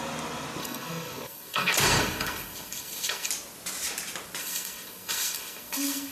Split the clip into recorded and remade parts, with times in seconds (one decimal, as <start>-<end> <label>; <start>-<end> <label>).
0.0-0.6 recorded; 0.6-3.3 remade; 3.3-4.4 recorded; 4.4-6.1 remade